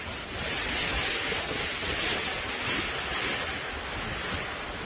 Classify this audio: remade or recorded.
recorded